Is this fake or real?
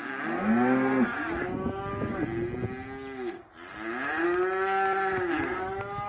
real